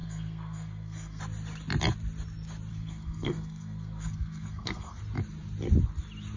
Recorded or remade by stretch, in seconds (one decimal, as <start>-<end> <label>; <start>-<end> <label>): 0.0-1.2 remade; 1.2-2.7 recorded; 2.7-5.0 remade; 5.0-6.4 recorded